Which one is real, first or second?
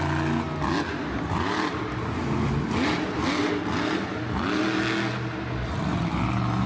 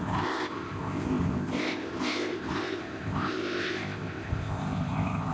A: first